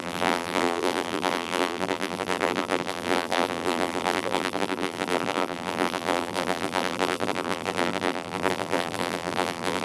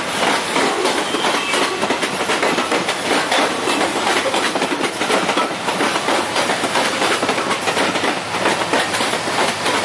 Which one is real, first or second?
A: second